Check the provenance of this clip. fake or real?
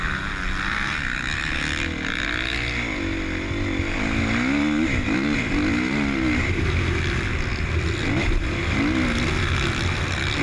real